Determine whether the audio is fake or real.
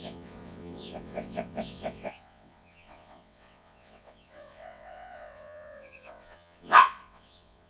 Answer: fake